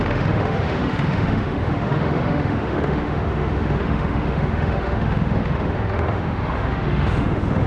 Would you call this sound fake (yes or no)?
yes